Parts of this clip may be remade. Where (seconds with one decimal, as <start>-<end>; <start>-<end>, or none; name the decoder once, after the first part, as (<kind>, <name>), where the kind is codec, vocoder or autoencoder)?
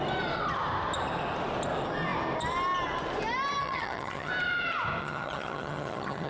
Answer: 3.6-4.3 (vocoder, HiFi-GAN); 5.0-6.3